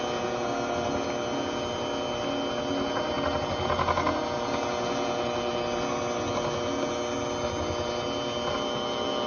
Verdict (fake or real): real